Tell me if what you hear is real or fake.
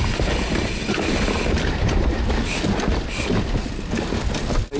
real